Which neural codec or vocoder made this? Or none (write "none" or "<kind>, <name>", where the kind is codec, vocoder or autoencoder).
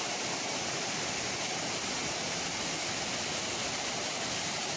none